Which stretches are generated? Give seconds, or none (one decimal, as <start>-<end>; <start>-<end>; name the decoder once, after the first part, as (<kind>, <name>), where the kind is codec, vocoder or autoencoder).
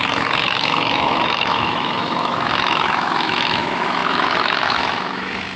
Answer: 0.0-5.6 (autoencoder, DAC-VAE)